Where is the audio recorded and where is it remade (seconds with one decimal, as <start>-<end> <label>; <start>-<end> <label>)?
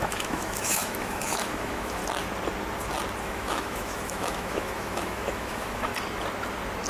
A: 0.0-2.0 remade; 2.0-3.2 recorded; 3.2-5.9 remade; 5.9-6.9 recorded